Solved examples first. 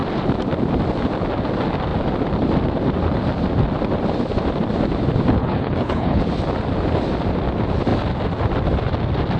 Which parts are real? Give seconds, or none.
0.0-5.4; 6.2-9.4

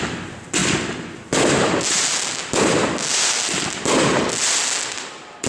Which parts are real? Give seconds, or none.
0.0-5.5

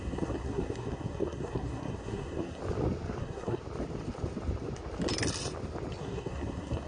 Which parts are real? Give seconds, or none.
2.6-3.2; 3.6-6.0

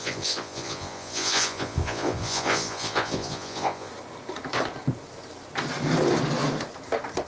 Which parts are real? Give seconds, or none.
3.9-7.3

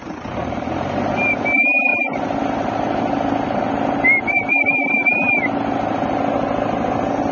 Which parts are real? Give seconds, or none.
0.0-7.3

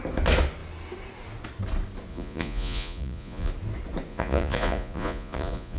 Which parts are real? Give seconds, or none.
0.0-2.1; 3.5-4.1

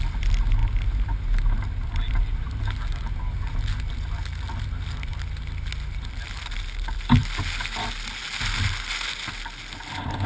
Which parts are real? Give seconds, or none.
0.0-10.3